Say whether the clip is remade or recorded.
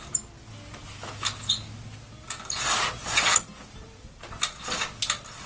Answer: recorded